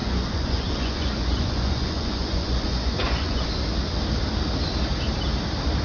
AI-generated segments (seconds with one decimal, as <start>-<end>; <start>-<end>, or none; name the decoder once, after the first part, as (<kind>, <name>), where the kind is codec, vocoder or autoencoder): 0.0-3.5 (vocoder, Vocos)